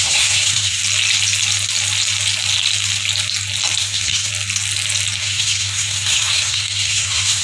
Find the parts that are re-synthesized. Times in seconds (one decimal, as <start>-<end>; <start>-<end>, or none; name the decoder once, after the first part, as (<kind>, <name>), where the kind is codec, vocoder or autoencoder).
0.0-0.8 (codec, SNAC); 3.8-4.3; 5.2-7.4